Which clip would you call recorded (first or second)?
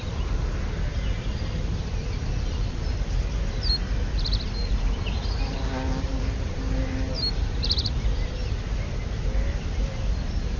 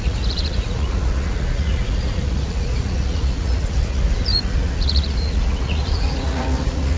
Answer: first